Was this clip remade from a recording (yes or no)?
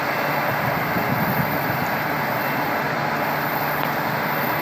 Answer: no